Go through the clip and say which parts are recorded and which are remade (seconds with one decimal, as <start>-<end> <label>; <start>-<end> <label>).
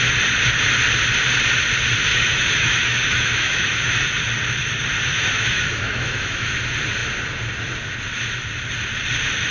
0.0-2.1 recorded; 2.1-4.1 remade; 4.1-5.1 recorded; 5.1-6.5 remade; 6.5-9.5 recorded